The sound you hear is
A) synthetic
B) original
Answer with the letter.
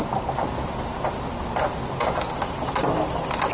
B